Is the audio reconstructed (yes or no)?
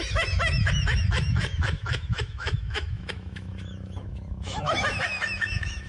yes